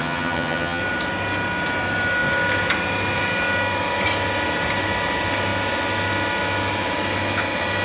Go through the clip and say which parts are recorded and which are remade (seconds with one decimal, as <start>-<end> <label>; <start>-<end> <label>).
0.0-0.8 remade; 0.8-7.8 recorded